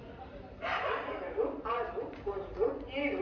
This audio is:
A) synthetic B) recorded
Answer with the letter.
A